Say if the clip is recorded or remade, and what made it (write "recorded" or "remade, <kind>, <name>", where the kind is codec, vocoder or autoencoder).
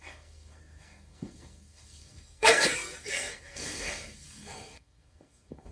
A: remade, codec, SNAC